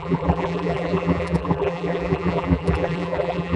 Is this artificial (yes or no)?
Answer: yes